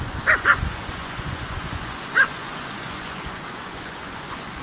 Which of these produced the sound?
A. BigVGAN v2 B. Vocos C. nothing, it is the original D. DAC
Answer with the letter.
B